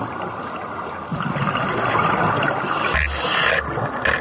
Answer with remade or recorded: recorded